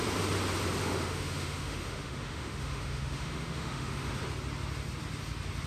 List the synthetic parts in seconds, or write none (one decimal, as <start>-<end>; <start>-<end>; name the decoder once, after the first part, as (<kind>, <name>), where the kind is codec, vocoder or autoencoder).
0.8-4.2 (autoencoder, DAC-VAE)